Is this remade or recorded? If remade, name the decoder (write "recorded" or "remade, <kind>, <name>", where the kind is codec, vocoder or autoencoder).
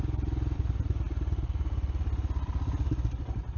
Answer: recorded